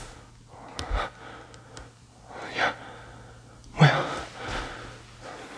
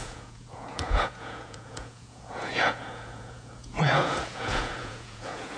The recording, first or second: first